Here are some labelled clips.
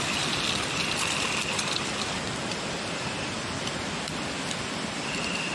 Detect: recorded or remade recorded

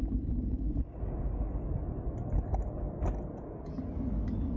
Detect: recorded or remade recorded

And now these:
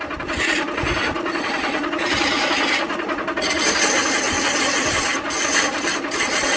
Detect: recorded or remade recorded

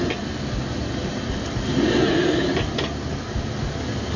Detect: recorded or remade recorded